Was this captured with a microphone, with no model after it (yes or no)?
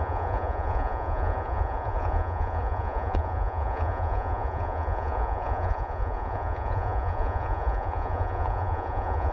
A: no